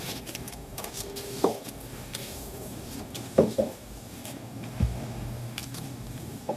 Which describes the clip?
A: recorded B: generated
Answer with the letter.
B